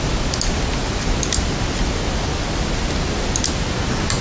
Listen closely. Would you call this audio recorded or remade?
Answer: recorded